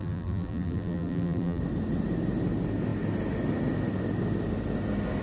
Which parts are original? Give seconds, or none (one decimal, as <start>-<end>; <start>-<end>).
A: 1.6-5.2